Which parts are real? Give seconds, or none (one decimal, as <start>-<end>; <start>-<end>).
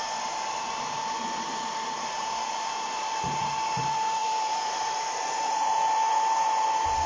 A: none